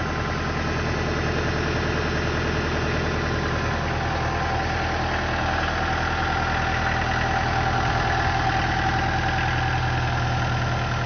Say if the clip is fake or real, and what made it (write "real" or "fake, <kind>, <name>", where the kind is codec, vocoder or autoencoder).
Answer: real